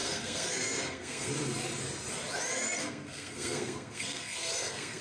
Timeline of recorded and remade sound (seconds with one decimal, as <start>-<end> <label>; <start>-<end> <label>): 0.0-1.3 remade; 1.3-2.8 recorded; 2.8-5.0 remade